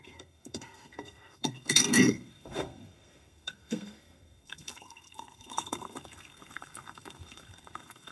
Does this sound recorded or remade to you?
remade